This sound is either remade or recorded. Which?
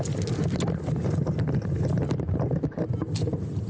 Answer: recorded